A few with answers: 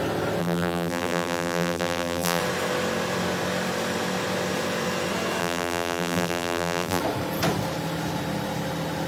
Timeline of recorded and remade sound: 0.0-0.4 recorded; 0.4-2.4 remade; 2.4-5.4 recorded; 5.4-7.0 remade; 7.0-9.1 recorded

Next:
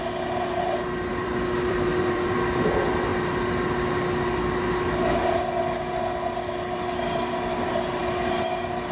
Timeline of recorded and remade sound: 0.0-1.1 recorded; 1.1-2.4 remade; 2.4-8.9 recorded